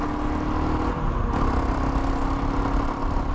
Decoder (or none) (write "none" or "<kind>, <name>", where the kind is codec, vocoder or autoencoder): none